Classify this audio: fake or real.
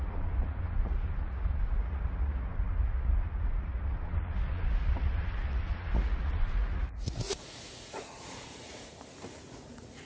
fake